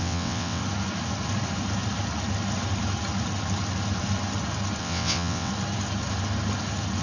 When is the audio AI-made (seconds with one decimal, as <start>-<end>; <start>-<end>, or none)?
0.0-0.6; 4.8-5.5